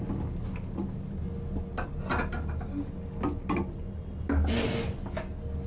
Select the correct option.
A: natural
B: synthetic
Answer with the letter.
A